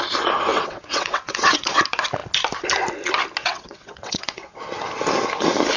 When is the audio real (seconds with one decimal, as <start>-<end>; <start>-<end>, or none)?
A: 0.0-0.5; 1.8-3.4; 4.6-5.8